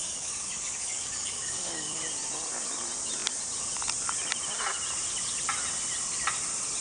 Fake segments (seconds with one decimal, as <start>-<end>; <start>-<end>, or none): 0.0-2.0

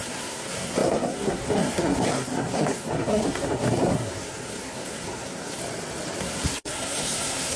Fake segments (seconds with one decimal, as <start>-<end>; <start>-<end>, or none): 0.0-5.6; 6.2-7.6

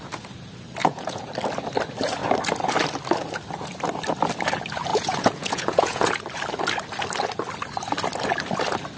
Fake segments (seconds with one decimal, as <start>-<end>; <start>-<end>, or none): 0.8-1.3; 4.9-6.2

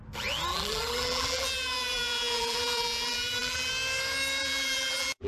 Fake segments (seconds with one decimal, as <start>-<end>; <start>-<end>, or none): 0.5-3.7; 4.4-5.3